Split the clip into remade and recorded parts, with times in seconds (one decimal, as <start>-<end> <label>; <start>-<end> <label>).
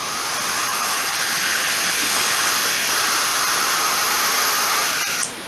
0.0-0.7 recorded; 0.7-2.5 remade; 2.5-5.5 recorded